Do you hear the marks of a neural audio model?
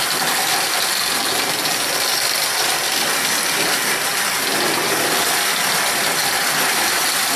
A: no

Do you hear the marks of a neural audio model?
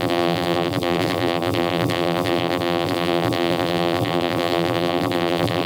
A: yes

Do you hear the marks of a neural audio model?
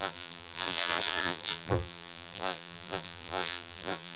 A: yes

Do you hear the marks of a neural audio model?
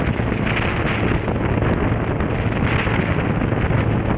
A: no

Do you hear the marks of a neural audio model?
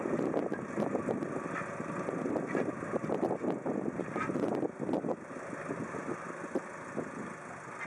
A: no